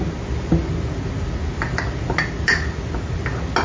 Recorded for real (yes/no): yes